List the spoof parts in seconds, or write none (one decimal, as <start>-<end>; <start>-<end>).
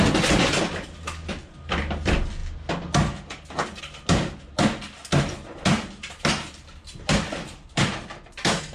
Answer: none